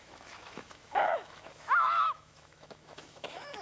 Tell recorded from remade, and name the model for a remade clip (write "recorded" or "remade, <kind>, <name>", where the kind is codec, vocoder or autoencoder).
remade, autoencoder, DAC-VAE